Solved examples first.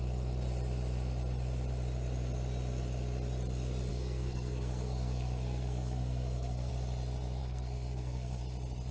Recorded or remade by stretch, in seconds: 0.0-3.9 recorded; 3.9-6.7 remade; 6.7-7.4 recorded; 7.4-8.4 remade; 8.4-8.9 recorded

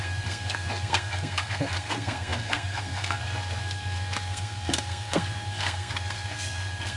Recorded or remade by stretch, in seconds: 0.0-7.0 remade

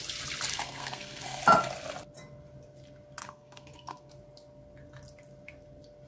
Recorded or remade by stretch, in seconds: 0.0-0.5 recorded; 0.5-1.4 remade; 1.4-3.2 recorded; 3.2-4.1 remade; 4.1-6.1 recorded

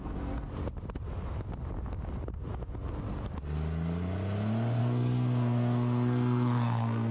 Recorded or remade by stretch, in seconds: 0.0-0.5 remade; 0.5-4.8 recorded; 4.8-7.1 remade